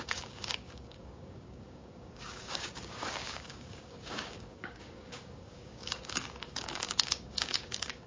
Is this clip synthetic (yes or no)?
yes